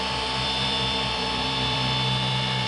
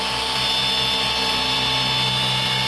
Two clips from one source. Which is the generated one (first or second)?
first